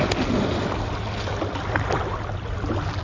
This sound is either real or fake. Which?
real